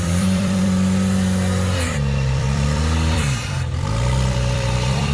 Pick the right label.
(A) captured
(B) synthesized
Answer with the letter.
B